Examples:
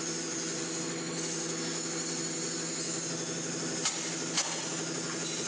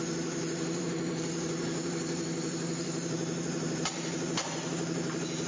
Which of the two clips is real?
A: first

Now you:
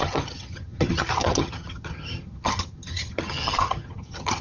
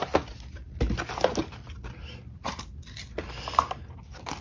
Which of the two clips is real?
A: second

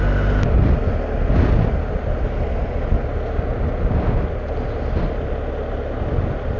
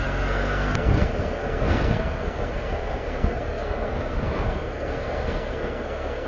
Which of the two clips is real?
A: first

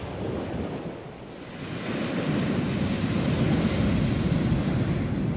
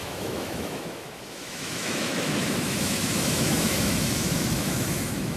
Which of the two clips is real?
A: first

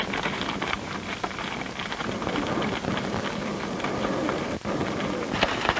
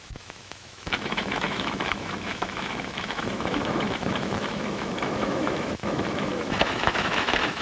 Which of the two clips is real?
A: first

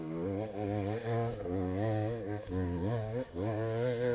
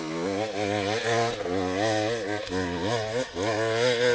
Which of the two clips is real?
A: second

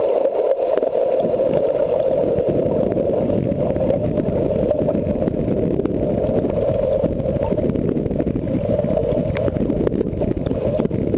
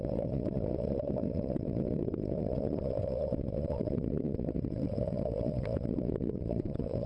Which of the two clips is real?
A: first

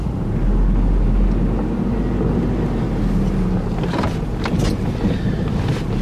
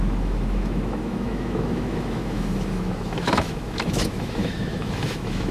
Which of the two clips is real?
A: first